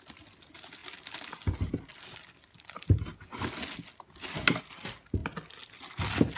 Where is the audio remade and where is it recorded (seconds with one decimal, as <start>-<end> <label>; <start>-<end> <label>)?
0.0-6.4 recorded